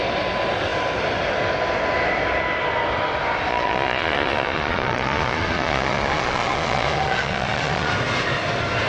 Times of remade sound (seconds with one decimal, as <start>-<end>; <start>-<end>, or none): 3.5-7.9